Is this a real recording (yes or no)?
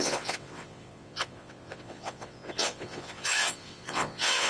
no